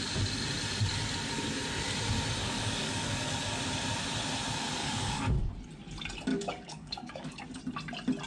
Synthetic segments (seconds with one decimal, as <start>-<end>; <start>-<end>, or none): 2.4-3.6; 4.8-5.5; 6.3-7.6